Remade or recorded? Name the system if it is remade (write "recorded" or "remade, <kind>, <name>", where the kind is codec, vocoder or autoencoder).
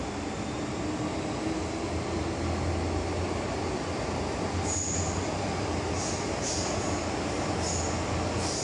recorded